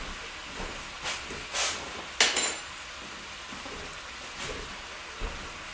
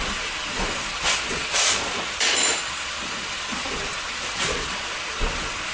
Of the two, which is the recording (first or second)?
first